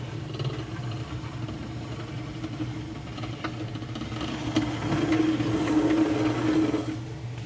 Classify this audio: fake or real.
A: real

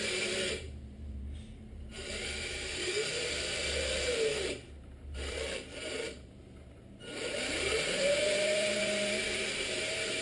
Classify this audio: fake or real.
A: fake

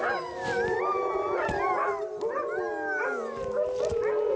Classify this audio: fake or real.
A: real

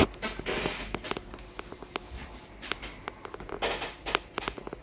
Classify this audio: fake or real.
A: real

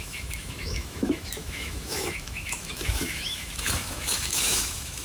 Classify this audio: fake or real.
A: fake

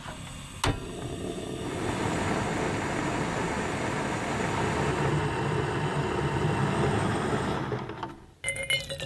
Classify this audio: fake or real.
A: real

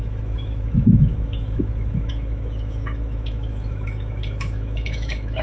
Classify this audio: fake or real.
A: fake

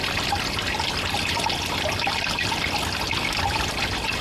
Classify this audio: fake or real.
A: real